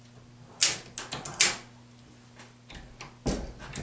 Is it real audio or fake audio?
real